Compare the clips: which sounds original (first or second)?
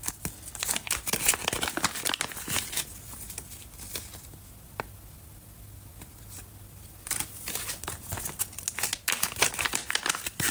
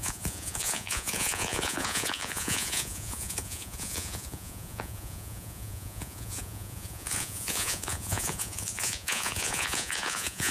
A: first